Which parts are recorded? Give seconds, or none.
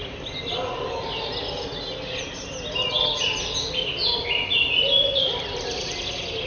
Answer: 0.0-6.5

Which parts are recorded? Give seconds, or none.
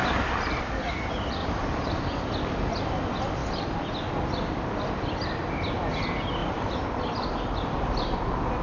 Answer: 0.0-1.4; 2.8-3.4; 4.1-6.4; 7.3-8.6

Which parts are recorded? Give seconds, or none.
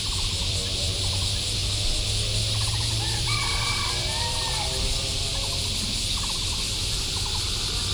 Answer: 1.6-3.2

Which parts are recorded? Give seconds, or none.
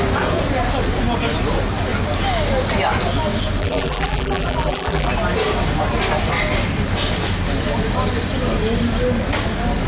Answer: 0.0-3.6; 5.1-9.9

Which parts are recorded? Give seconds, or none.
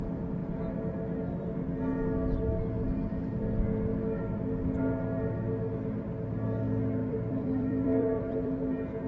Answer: 0.0-7.0; 8.5-9.1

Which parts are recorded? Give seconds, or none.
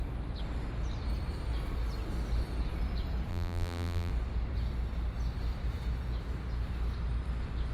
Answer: 0.0-3.3; 4.1-7.7